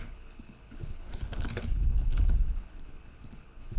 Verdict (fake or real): fake